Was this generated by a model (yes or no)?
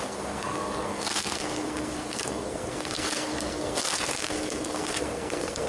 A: yes